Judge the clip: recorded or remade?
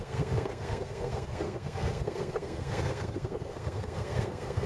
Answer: remade